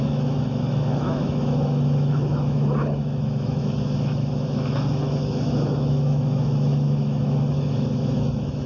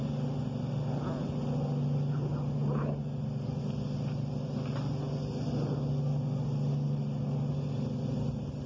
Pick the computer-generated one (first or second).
first